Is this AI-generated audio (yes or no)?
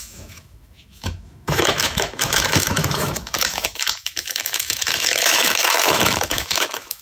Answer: yes